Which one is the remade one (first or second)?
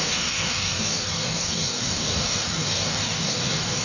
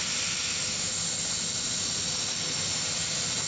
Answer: first